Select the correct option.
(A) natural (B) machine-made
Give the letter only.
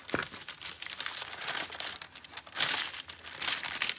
A